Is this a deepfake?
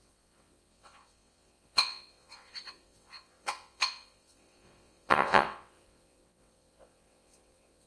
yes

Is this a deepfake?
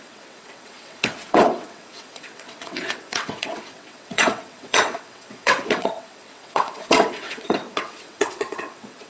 yes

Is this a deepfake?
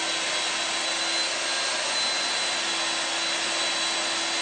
no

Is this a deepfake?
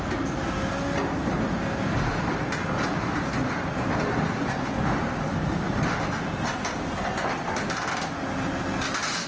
no